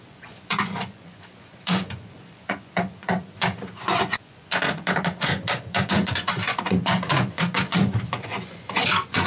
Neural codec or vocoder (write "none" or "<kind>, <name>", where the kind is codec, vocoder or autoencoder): vocoder, Vocos